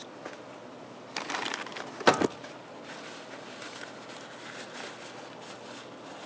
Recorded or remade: recorded